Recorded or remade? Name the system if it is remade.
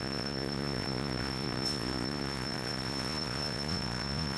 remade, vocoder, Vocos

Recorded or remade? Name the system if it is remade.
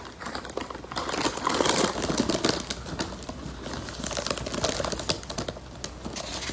recorded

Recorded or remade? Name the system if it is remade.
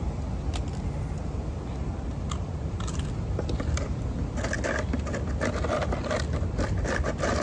recorded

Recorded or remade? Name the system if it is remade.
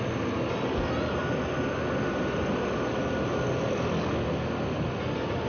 recorded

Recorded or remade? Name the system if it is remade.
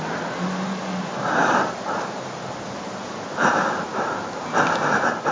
recorded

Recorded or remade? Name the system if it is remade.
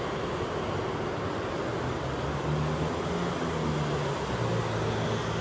recorded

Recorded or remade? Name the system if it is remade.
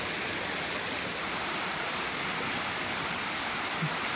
recorded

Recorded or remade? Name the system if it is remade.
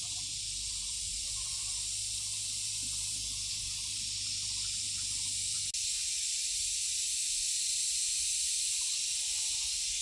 recorded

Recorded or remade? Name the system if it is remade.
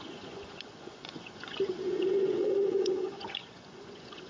remade, vocoder, Vocos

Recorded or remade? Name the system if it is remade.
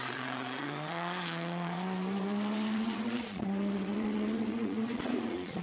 remade, vocoder, Vocos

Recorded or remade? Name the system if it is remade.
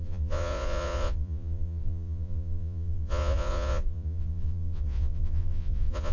remade, vocoder, Vocos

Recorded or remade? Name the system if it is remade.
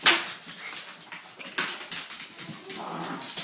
recorded